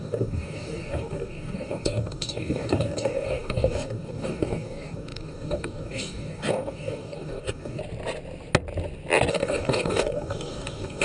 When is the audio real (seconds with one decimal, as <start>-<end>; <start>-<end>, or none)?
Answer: 7.8-9.3